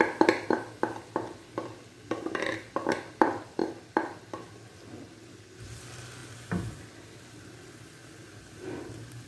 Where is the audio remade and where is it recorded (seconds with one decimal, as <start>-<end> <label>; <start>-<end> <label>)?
0.0-9.3 recorded